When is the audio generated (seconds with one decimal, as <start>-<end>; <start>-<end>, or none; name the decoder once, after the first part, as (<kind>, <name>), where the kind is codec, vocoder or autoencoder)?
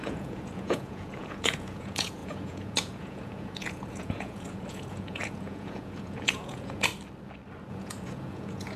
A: 0.0-6.9 (vocoder, Vocos); 7.7-8.8